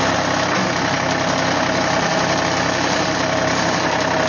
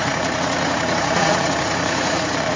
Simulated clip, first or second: second